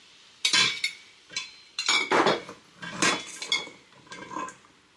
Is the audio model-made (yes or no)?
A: no